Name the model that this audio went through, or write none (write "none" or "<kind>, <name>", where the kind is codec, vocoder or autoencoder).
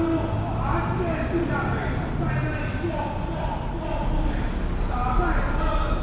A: none